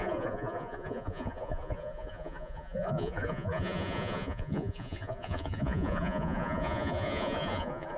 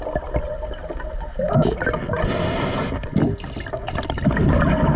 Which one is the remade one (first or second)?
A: first